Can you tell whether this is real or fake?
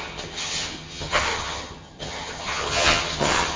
fake